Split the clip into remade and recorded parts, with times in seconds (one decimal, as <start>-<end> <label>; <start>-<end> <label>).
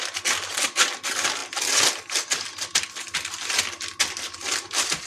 0.0-5.1 recorded